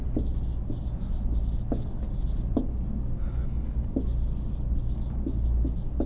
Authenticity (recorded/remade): recorded